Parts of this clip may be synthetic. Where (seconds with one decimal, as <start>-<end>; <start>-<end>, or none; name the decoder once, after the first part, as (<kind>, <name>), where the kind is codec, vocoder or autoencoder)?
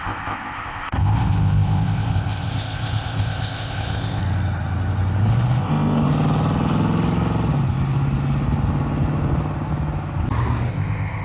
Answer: 0.0-4.2 (codec, ZipCodec); 5.6-6.1; 10.7-11.2